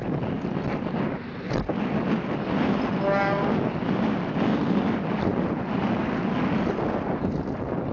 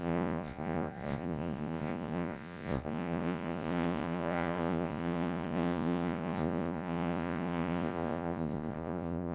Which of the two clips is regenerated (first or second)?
second